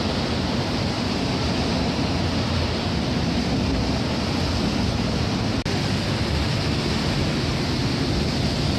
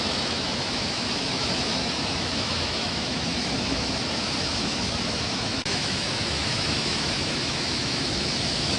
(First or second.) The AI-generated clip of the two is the second